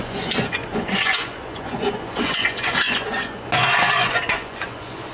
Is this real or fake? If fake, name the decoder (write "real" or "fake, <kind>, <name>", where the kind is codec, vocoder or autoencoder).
fake, vocoder, Vocos